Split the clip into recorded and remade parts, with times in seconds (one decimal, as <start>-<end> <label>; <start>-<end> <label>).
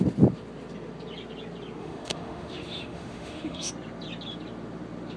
0.0-1.8 recorded; 1.8-3.7 remade; 3.7-5.2 recorded